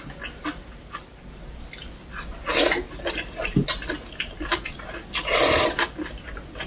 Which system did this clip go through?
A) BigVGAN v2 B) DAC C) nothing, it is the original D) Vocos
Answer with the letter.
C